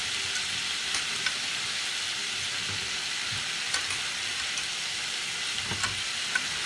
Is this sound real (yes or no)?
yes